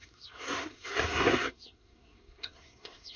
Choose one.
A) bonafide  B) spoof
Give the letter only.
B